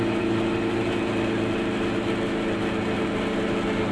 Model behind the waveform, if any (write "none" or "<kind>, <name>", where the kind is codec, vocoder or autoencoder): none